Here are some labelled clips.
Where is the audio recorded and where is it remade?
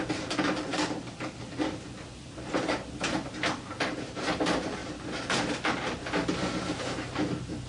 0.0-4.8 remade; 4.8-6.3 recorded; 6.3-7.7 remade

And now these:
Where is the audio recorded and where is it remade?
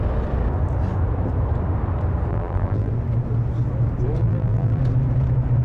0.0-2.3 recorded; 2.3-2.9 remade; 2.9-4.2 recorded; 4.2-4.8 remade; 4.8-5.6 recorded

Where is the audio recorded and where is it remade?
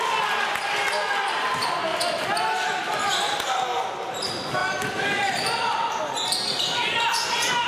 0.0-1.9 recorded; 1.9-3.1 remade; 3.1-4.6 recorded; 4.6-6.0 remade; 6.0-7.7 recorded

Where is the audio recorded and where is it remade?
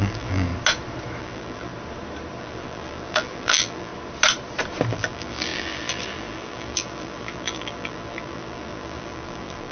0.0-0.5 remade; 0.5-1.2 recorded; 1.2-1.7 remade; 1.7-2.4 recorded; 2.4-3.9 remade; 3.9-4.9 recorded; 4.9-9.7 remade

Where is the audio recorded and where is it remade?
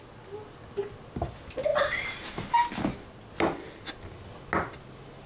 0.0-5.3 recorded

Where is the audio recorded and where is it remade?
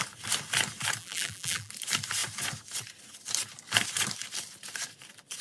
0.0-1.0 recorded; 1.0-1.7 remade; 1.7-5.4 recorded